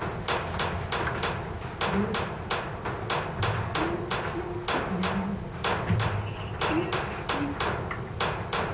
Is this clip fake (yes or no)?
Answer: no